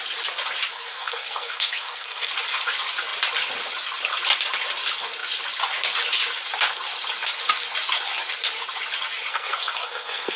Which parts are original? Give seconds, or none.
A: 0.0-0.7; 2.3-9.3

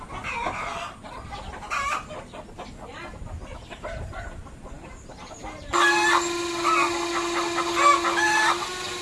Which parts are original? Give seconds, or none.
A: 0.0-9.0

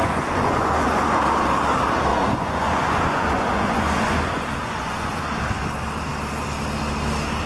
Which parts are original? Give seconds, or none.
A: 1.2-2.1; 5.2-7.5

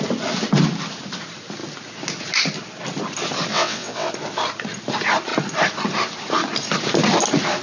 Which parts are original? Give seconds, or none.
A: 0.0-3.5; 4.1-7.6

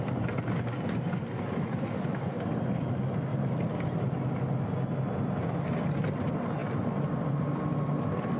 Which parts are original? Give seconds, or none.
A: 0.0-3.3; 3.8-6.6; 7.6-8.4

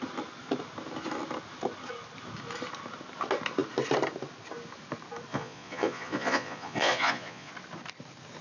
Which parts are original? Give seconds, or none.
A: 0.0-5.3; 7.5-8.4

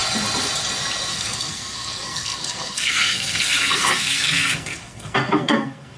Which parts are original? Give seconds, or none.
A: 0.0-1.1

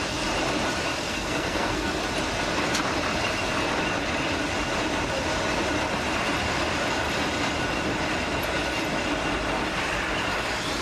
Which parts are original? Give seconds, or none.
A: 0.0-0.9; 2.0-10.8